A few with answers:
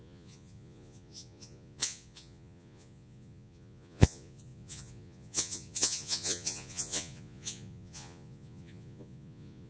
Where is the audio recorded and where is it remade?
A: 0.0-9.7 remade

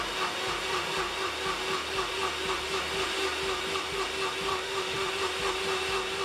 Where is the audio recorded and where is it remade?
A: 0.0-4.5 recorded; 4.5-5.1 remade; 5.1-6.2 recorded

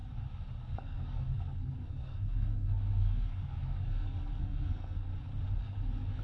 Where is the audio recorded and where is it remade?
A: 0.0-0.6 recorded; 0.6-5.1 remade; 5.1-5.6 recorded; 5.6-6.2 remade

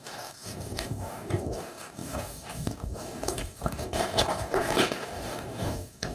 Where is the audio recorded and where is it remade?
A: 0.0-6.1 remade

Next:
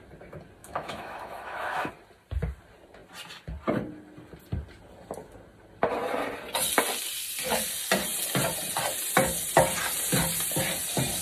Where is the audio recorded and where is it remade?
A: 0.0-0.6 recorded; 0.6-1.9 remade; 1.9-11.2 recorded